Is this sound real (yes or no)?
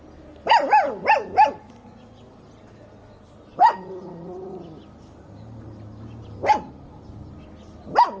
yes